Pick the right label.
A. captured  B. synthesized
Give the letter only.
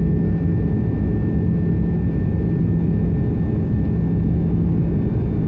A